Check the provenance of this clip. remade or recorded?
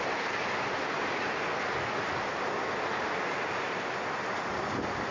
recorded